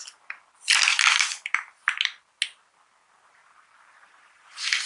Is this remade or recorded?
recorded